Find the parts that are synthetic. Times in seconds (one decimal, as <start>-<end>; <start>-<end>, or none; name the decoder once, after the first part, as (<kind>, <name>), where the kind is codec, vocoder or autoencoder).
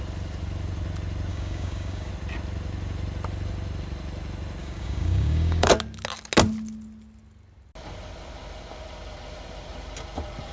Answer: 1.3-2.1 (codec, DAC); 4.6-5.7